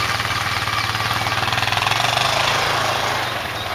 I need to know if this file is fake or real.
real